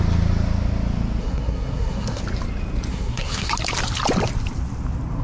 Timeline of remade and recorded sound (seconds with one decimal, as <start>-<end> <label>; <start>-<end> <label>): 0.0-1.2 recorded; 1.2-2.2 remade; 2.2-2.9 recorded; 2.9-3.5 remade; 3.5-5.2 recorded